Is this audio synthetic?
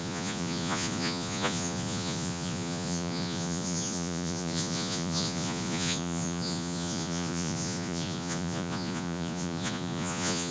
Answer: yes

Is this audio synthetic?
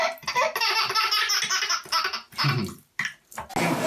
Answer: no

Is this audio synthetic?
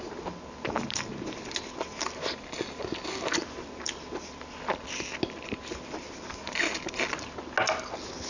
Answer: no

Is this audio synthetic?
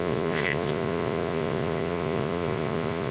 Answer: yes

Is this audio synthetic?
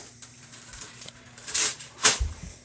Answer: yes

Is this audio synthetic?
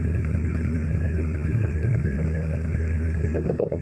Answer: yes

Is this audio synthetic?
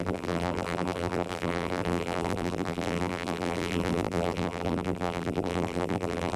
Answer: yes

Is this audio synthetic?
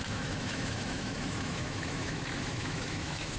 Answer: yes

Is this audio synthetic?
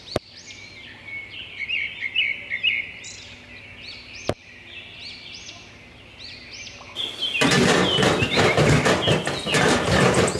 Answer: no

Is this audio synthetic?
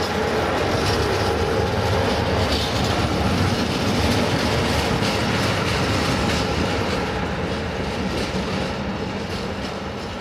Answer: no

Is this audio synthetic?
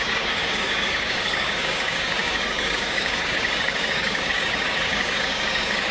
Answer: yes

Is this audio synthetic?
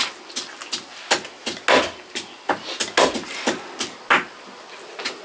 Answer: no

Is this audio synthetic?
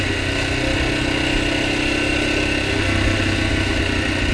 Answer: no